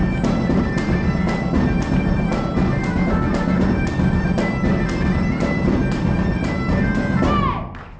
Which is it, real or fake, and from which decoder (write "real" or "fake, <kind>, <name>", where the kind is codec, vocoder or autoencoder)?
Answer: real